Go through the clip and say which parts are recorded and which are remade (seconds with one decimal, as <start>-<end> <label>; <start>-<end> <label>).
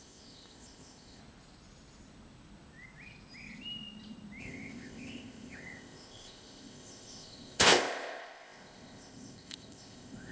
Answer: 0.0-1.2 remade; 1.2-4.4 recorded; 4.4-10.3 remade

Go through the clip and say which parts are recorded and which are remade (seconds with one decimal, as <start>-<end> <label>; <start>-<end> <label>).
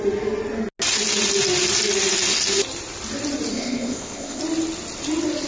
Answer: 0.0-3.5 recorded; 3.5-4.4 remade; 4.4-5.5 recorded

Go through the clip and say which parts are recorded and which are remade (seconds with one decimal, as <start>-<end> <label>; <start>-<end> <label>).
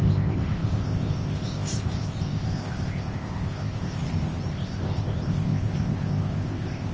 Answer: 0.0-4.0 remade; 4.0-4.5 recorded; 4.5-6.9 remade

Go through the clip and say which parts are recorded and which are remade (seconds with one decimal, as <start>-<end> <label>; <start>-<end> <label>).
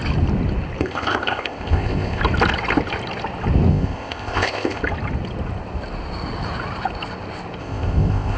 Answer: 0.0-0.8 recorded; 0.8-2.2 remade; 2.2-3.7 recorded; 3.7-4.8 remade; 4.8-7.6 recorded; 7.6-8.4 remade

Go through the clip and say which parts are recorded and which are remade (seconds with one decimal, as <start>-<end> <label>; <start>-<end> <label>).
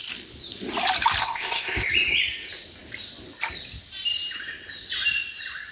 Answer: 0.0-1.2 recorded; 1.2-1.9 remade; 1.9-5.7 recorded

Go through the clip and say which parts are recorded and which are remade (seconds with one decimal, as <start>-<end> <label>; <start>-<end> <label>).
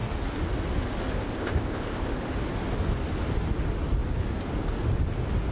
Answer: 0.0-1.2 recorded; 1.2-2.1 remade; 2.1-5.5 recorded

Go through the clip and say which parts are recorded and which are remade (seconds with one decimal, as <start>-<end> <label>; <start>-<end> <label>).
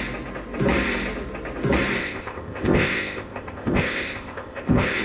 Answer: 0.0-2.0 recorded; 2.0-5.0 remade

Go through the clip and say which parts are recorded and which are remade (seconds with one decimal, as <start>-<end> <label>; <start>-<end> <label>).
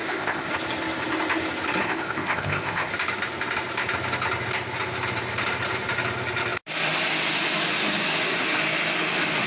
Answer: 0.0-0.5 remade; 0.5-1.8 recorded; 1.8-2.9 remade; 2.9-9.5 recorded